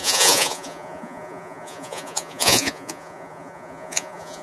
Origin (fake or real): fake